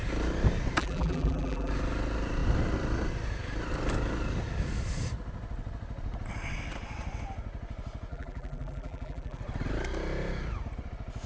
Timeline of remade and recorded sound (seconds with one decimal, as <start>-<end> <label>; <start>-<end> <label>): 0.0-0.8 recorded; 0.8-1.7 remade; 1.7-8.1 recorded; 8.1-9.4 remade; 9.4-11.3 recorded